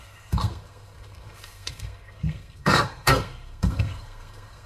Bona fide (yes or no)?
no